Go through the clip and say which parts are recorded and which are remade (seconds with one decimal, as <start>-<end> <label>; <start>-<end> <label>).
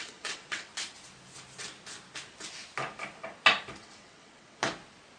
0.0-0.7 remade; 0.7-3.8 recorded; 3.8-4.6 remade; 4.6-5.2 recorded